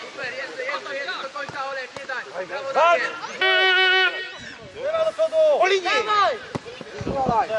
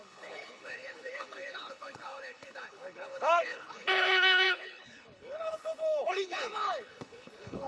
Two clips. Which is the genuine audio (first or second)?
first